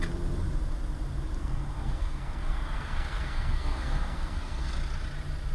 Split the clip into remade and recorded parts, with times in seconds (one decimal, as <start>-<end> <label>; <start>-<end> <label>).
0.0-1.4 recorded; 1.4-4.7 remade; 4.7-5.5 recorded